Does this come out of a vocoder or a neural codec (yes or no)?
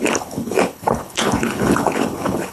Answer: yes